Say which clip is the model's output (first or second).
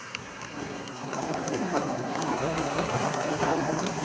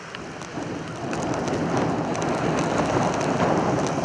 first